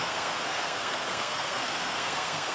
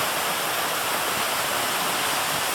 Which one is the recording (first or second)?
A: second